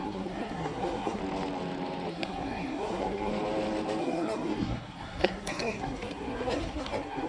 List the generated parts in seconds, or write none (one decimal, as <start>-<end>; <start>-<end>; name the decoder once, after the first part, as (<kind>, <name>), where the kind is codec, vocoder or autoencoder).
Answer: 0.0-1.2 (codec, SNAC); 2.1-3.3; 4.0-7.3